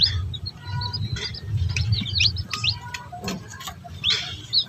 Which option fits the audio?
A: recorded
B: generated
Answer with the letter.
A